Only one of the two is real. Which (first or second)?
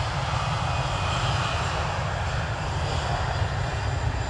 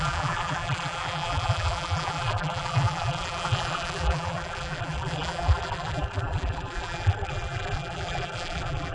first